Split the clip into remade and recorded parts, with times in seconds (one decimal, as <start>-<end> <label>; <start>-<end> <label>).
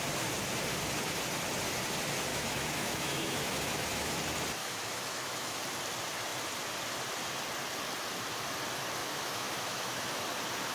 0.0-2.3 recorded; 2.3-4.1 remade; 4.1-4.6 recorded; 4.6-5.6 remade; 5.6-9.0 recorded; 9.0-10.2 remade; 10.2-10.7 recorded